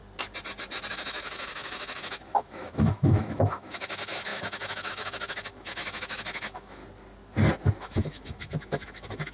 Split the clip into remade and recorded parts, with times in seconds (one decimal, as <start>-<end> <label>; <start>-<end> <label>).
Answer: 0.0-0.9 recorded; 0.9-6.8 remade; 6.8-7.8 recorded; 7.8-9.3 remade